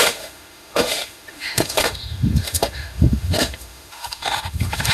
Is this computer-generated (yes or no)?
yes